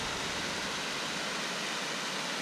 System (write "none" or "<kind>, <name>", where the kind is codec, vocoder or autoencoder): none